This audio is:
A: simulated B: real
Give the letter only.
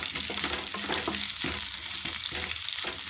B